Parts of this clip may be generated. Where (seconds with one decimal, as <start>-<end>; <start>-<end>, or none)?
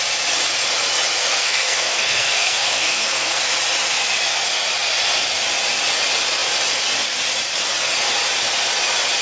1.2-3.4